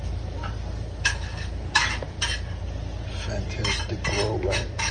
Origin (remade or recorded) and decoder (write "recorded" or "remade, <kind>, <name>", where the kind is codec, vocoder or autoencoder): recorded